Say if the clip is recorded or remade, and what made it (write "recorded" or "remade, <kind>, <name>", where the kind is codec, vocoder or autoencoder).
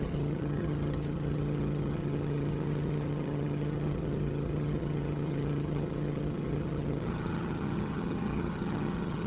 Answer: remade, vocoder, HiFi-GAN